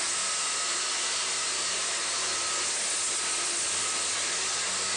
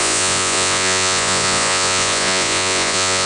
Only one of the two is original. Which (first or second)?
first